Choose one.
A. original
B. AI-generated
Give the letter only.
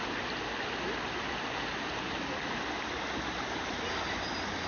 A